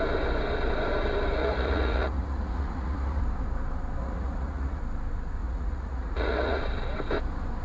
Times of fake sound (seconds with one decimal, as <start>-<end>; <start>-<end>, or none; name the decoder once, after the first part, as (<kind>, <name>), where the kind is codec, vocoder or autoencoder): 1.4-3.2 (vocoder, Vocos); 4.0-4.8; 5.4-6.6